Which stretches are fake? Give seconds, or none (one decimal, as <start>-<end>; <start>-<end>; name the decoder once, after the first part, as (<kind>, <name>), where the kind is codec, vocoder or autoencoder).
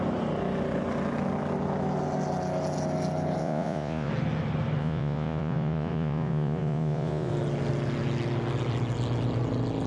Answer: 3.4-4.1 (vocoder, Vocos); 4.8-7.3